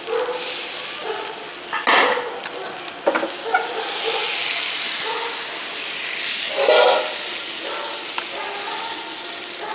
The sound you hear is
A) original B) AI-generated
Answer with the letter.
A